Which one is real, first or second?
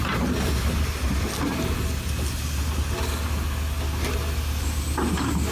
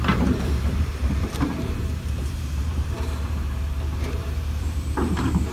first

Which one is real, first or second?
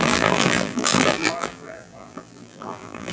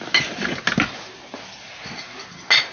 second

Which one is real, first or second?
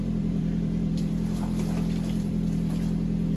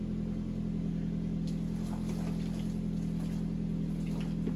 second